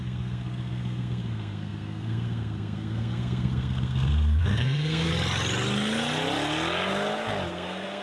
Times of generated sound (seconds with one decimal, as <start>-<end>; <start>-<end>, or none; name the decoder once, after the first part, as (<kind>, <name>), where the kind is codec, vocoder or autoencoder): 0.0-5.1 (codec, SNAC); 7.5-8.0